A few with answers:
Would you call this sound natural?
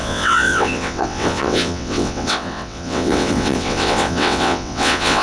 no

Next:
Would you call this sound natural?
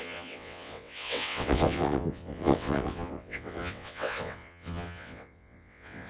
no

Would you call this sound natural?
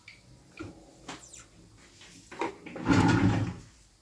yes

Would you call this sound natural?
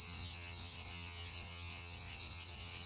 no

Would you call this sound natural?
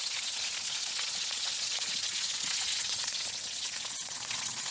no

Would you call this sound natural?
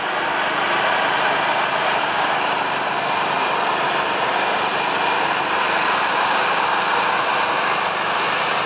yes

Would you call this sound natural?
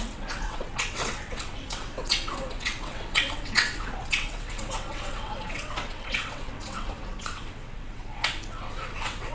no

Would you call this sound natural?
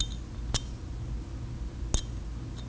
yes